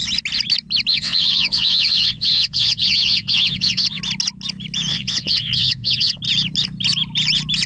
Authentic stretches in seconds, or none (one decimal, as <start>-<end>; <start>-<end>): 0.0-0.9; 4.0-4.9; 6.2-7.7